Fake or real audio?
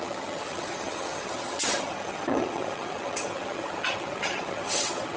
fake